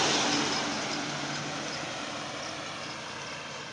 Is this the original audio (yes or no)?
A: yes